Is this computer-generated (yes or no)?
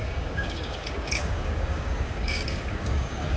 yes